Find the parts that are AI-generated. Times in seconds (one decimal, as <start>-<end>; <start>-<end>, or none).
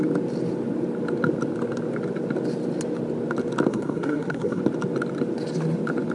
3.7-4.6